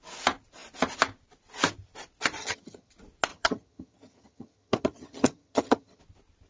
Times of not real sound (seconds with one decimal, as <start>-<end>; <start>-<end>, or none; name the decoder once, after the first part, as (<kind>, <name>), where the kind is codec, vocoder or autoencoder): 2.4-2.9 (vocoder, HiFi-GAN); 3.3-6.0